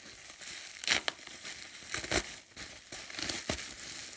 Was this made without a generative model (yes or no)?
yes